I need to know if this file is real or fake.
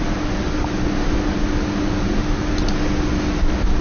real